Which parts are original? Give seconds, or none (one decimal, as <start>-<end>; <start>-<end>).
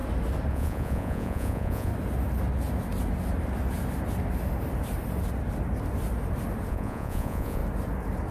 0.0-0.5; 1.9-6.7; 7.6-8.3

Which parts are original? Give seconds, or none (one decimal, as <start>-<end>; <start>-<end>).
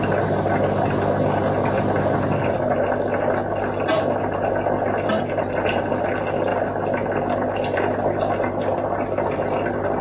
0.0-10.0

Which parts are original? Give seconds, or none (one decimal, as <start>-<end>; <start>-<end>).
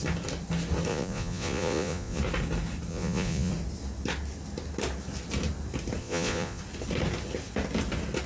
0.0-0.9; 2.2-2.9; 3.5-6.0; 6.6-8.3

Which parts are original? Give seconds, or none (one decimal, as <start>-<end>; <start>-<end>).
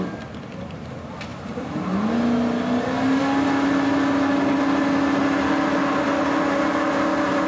0.0-7.5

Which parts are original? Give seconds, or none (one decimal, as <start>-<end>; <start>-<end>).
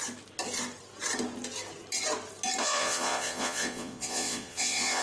0.0-2.6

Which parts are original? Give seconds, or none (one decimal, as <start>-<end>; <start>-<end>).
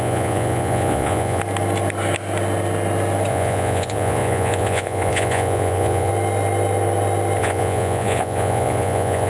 1.4-3.3; 6.1-7.4